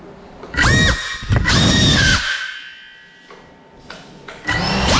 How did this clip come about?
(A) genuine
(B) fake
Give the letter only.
A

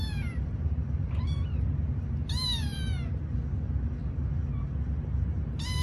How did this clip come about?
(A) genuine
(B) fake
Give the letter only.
A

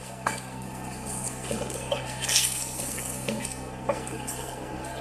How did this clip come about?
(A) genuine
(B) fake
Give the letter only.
B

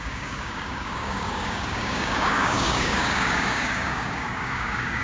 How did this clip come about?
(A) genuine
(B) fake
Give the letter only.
B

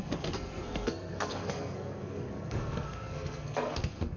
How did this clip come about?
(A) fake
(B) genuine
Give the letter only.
A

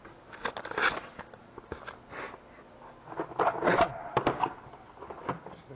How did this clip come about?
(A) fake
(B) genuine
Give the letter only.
B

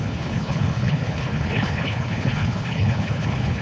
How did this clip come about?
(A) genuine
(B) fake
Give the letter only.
B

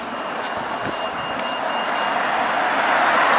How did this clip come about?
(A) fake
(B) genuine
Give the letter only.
B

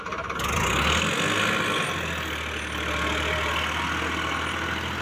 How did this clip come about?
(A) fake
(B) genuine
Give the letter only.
B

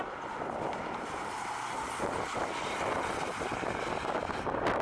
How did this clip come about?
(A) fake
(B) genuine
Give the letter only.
B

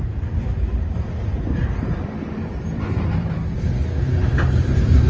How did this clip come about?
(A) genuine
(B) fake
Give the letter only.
B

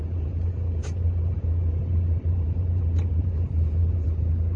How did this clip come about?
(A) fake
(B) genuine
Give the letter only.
A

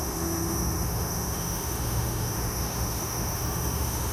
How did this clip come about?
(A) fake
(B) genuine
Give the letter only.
A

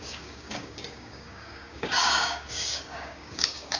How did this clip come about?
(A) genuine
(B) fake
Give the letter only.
B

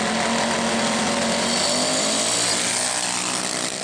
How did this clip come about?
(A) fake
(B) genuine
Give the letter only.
B